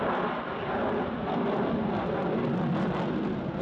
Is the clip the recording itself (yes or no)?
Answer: yes